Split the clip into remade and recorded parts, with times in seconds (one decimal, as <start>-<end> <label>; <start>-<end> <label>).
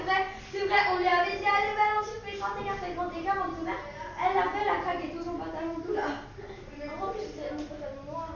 0.0-8.4 recorded